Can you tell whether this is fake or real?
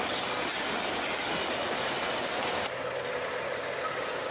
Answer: real